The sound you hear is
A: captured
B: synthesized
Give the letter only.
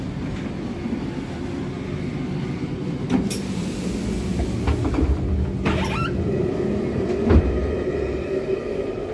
A